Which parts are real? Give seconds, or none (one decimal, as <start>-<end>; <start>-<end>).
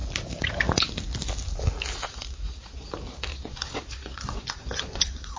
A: 0.0-1.9; 2.9-3.3